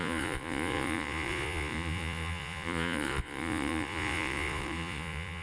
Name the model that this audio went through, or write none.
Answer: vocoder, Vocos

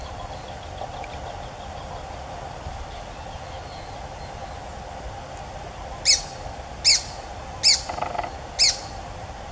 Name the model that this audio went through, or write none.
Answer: none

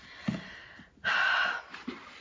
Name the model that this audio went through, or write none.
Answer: none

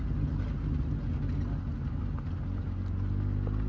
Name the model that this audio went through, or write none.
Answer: none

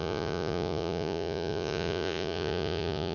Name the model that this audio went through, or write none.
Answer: vocoder, Vocos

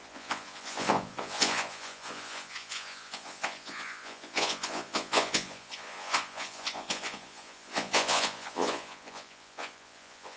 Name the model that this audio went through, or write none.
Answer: vocoder, Vocos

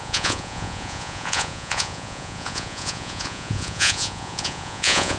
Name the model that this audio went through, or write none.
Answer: vocoder, Vocos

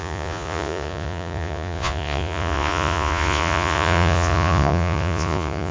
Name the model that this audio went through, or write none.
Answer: vocoder, Vocos